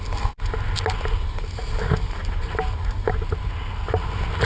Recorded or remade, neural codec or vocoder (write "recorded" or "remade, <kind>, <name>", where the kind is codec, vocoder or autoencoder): recorded